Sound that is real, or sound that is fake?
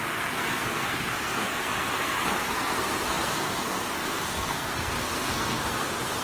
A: fake